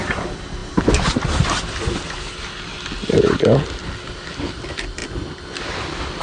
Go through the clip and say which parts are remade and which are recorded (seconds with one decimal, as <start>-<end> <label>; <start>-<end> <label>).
0.0-6.2 recorded

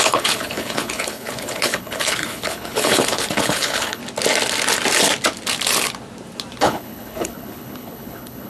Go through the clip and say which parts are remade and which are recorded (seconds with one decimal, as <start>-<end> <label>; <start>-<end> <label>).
0.0-4.0 remade; 4.0-6.6 recorded; 6.6-8.5 remade